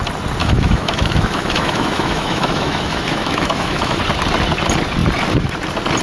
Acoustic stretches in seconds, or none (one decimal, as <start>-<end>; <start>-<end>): 0.0-0.4; 4.0-6.0